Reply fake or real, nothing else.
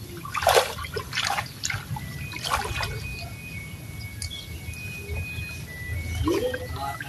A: real